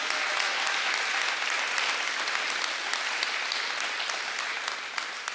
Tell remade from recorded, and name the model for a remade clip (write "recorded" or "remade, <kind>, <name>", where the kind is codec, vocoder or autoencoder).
recorded